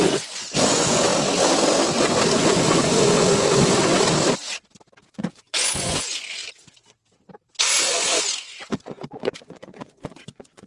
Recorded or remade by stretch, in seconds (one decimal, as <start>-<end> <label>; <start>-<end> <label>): 0.0-1.1 remade; 1.1-2.3 recorded; 2.3-4.1 remade; 4.1-5.1 recorded; 5.1-6.4 remade; 6.4-7.8 recorded; 7.8-10.7 remade